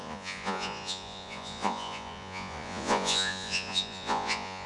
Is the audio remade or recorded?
remade